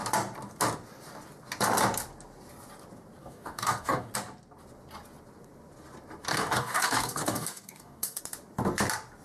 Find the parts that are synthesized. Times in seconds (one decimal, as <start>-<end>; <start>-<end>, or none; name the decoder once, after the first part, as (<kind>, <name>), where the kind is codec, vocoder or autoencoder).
3.2-4.1 (codec, DAC); 6.3-8.2